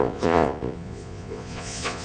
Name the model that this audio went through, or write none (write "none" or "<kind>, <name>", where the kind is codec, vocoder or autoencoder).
vocoder, Vocos